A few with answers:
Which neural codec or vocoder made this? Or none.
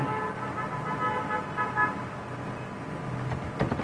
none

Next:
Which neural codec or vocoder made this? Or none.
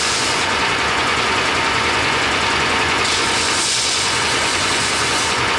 vocoder, Vocos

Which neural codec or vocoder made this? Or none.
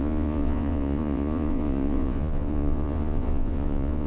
vocoder, Vocos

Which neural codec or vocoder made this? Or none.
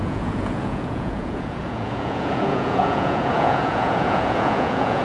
vocoder, Vocos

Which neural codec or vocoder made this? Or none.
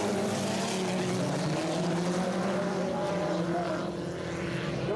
none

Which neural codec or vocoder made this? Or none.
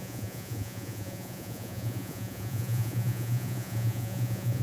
vocoder, Vocos